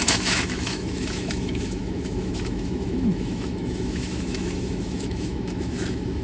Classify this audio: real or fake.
fake